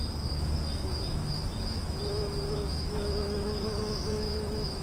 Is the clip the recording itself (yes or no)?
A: no